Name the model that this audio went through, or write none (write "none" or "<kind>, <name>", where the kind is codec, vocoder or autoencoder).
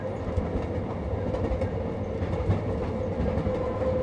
none